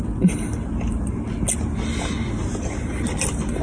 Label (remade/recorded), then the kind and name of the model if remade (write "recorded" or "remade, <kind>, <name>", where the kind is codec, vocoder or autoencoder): recorded